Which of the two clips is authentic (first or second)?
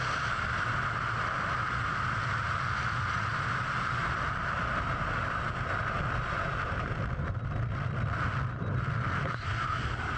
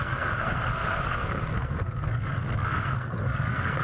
first